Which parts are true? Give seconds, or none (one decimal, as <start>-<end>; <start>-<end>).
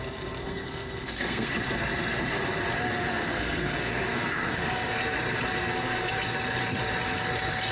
0.0-0.4; 1.5-3.1; 5.0-5.6; 6.1-7.7